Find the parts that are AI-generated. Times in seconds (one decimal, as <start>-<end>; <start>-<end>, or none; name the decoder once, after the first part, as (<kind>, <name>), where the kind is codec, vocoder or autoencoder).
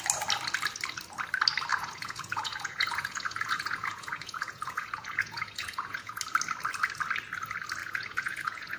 1.7-6.2 (vocoder, Vocos); 7.8-8.8